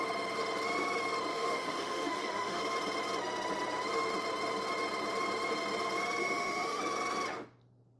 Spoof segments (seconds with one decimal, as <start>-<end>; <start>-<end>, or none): 1.3-2.6; 6.2-6.8

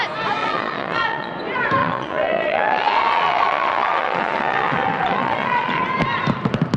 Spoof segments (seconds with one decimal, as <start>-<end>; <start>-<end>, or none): 0.4-1.3; 1.8-5.8

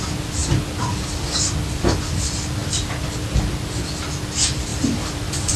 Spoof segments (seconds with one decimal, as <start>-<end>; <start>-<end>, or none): 4.7-5.6